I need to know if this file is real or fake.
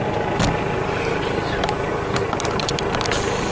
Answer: real